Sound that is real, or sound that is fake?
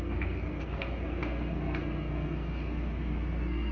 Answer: fake